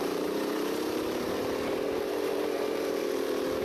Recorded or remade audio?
remade